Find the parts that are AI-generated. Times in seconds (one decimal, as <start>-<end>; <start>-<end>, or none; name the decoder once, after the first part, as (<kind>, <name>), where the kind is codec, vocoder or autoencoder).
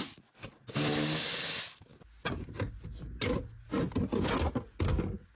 none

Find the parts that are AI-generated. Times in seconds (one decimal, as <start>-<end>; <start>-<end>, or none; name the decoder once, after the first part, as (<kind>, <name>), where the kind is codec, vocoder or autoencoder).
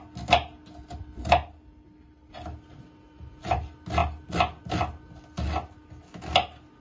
none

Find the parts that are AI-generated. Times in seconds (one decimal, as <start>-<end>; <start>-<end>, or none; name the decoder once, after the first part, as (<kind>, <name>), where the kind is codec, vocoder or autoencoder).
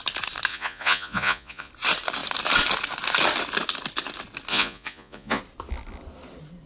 0.5-1.7 (vocoder, Vocos); 4.5-5.4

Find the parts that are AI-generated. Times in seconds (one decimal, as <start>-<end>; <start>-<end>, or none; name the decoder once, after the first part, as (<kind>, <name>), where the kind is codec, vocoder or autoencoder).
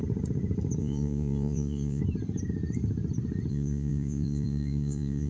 0.8-2.0 (vocoder, Vocos); 3.5-5.3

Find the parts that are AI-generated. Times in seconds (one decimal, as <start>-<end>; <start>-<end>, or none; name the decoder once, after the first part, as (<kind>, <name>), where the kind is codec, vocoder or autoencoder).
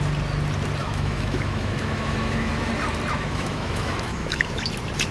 0.8-2.7 (autoencoder, DAC-VAE); 3.1-4.6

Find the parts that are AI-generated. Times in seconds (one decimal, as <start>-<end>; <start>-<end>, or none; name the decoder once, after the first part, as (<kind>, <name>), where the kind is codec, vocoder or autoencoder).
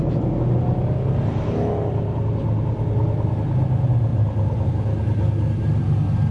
4.1-4.7 (vocoder, BigVGAN v2)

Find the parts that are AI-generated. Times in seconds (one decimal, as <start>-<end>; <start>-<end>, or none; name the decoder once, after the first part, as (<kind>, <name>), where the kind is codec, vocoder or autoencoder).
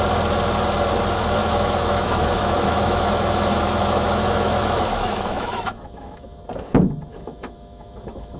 1.4-6.4 (autoencoder, DAC-VAE); 7.1-8.4